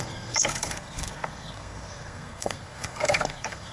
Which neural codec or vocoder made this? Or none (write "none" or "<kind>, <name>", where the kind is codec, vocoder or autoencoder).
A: codec, SNAC